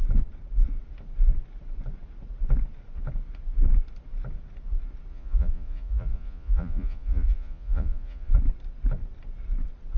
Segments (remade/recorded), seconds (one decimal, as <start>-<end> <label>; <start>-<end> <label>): 0.0-5.1 recorded; 5.1-8.3 remade; 8.3-10.0 recorded